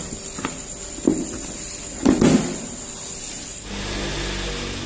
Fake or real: real